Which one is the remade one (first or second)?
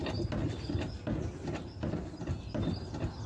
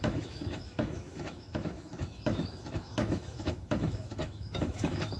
second